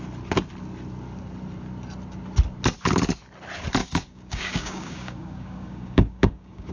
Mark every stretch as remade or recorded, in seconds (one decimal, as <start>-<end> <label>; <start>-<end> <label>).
0.0-3.8 recorded; 3.8-6.7 remade